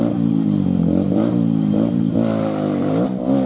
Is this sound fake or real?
fake